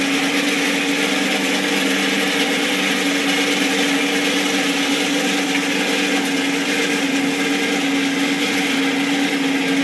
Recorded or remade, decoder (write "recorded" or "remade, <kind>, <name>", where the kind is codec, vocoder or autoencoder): recorded